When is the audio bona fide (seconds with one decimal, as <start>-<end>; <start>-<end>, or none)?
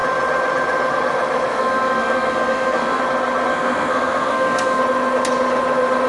0.0-1.5; 3.0-3.5; 4.8-6.1